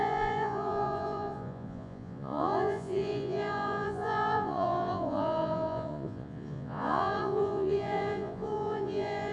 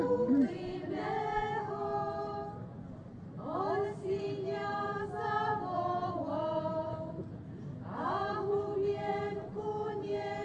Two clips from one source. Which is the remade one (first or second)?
first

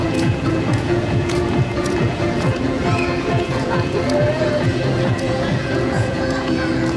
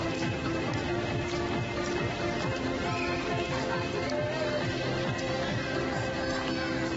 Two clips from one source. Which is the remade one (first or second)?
first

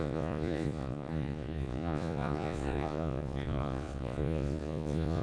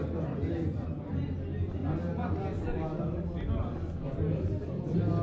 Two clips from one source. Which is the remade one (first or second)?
first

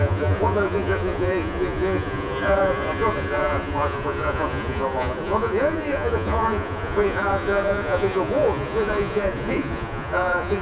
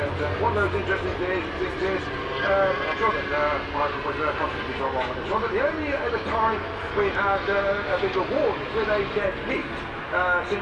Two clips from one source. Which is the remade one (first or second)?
first